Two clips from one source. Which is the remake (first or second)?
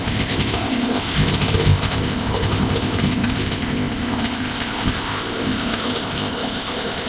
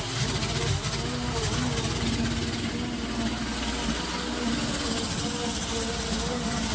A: first